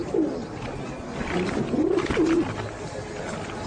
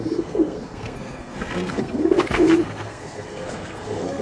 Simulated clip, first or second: second